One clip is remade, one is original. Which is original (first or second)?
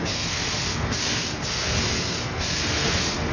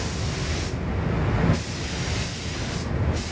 second